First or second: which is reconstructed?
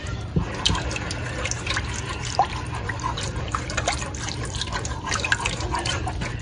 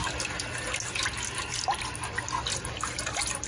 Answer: first